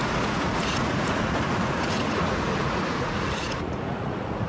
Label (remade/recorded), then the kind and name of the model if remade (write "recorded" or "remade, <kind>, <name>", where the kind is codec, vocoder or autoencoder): remade, vocoder, Vocos